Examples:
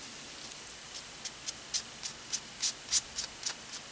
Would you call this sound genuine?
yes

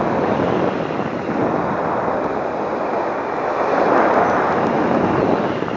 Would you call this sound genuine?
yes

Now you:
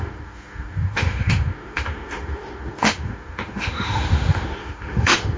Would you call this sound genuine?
no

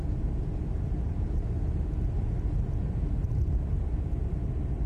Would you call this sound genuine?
yes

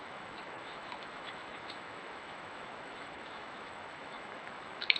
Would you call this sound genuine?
no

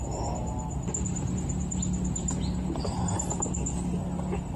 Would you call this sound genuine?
yes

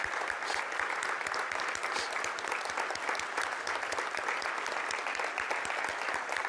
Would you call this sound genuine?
yes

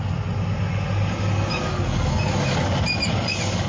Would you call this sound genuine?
yes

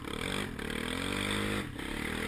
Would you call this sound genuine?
yes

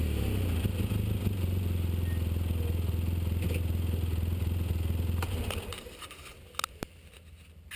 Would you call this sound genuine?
yes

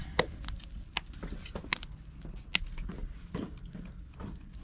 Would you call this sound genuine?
yes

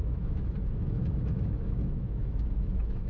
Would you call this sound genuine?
no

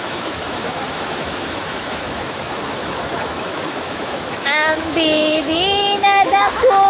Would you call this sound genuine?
no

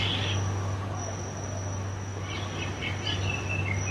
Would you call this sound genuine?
yes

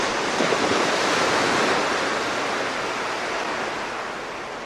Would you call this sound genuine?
yes